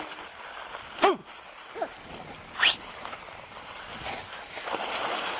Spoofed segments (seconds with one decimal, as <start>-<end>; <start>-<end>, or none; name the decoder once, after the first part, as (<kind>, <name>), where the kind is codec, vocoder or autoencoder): none